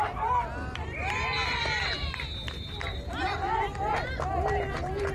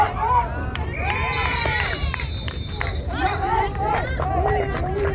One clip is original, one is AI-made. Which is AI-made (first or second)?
second